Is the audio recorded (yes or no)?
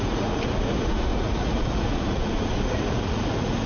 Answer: no